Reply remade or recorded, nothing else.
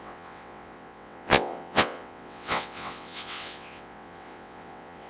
remade